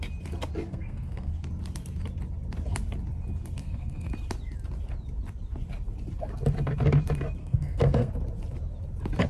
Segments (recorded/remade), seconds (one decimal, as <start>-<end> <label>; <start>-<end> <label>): 0.0-0.7 recorded; 0.7-1.3 remade; 1.3-3.6 recorded; 3.6-4.1 remade; 4.1-7.4 recorded; 7.4-8.1 remade; 8.1-9.3 recorded